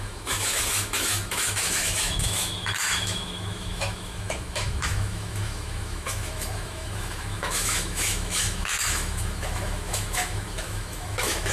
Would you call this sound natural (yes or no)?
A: no